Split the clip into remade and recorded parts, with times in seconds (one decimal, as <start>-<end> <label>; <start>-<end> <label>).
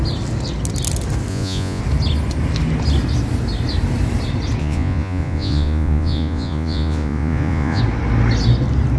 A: 0.0-1.3 recorded; 1.3-1.8 remade; 1.8-4.6 recorded; 4.6-7.8 remade; 7.8-9.0 recorded